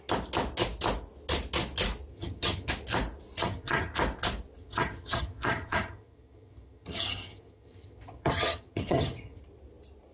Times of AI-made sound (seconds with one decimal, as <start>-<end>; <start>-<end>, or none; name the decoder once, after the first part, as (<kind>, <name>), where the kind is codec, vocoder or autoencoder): 2.1-2.7 (vocoder, HiFi-GAN); 3.4-3.9; 4.6-9.4